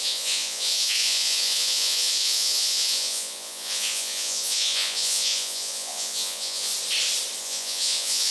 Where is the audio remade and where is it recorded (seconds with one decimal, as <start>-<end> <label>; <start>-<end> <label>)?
0.0-6.7 remade; 6.7-7.4 recorded; 7.4-8.3 remade